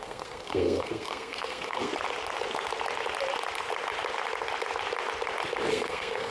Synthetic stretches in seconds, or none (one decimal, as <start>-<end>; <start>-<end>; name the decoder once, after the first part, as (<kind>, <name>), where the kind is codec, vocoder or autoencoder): 0.0-1.9 (codec, SNAC); 5.7-6.3